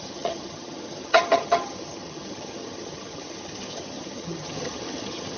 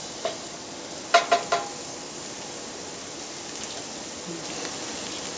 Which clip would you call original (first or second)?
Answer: second